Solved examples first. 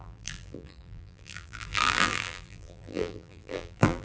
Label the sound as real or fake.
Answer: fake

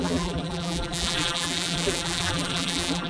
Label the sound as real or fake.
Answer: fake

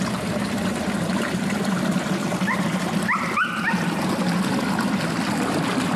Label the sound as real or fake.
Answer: real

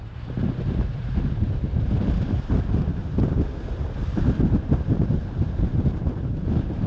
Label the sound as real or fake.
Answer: fake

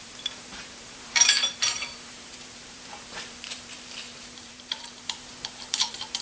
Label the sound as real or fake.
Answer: fake